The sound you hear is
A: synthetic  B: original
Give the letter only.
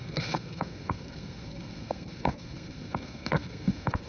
A